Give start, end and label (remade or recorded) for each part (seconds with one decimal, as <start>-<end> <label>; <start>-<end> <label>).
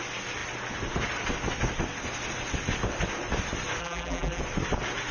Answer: 0.0-3.8 recorded; 3.8-4.4 remade; 4.4-5.1 recorded